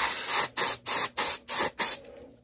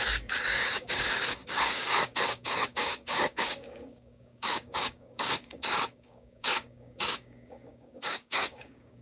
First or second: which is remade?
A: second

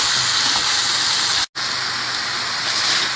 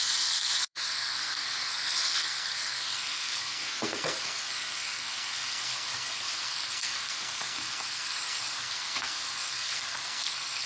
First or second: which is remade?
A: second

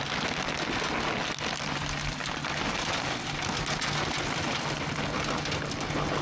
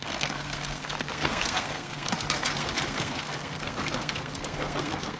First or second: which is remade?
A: second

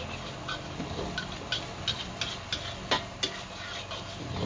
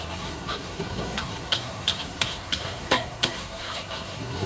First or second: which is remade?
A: second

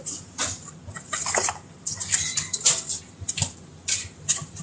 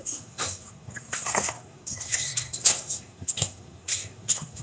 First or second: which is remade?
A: second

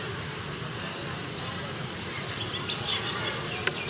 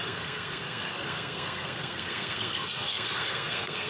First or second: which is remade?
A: second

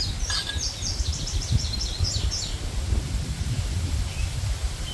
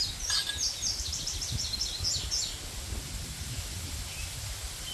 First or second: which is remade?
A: first